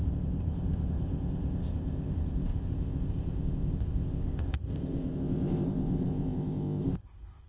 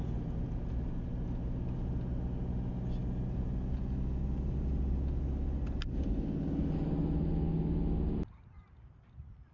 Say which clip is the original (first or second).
second